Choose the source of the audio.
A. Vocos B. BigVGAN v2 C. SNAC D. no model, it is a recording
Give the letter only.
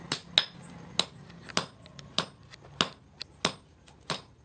D